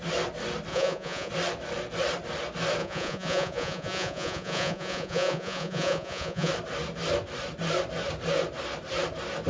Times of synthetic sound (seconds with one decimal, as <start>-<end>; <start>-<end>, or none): 0.7-1.3; 2.8-6.5